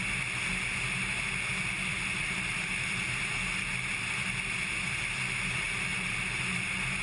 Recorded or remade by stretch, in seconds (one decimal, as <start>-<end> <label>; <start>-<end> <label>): 0.0-1.9 recorded; 1.9-3.4 remade; 3.4-5.9 recorded; 5.9-7.0 remade